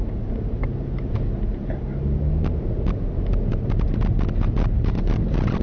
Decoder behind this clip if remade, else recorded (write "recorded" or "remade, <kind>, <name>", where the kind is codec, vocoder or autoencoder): recorded